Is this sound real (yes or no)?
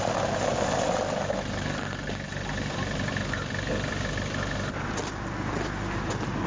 yes